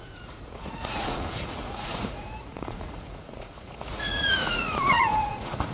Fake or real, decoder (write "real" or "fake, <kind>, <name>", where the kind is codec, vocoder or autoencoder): fake, vocoder, Vocos